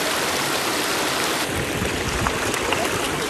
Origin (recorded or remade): remade